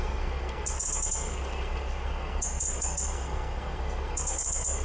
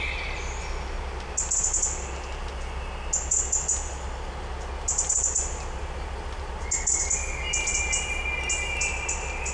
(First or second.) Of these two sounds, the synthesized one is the first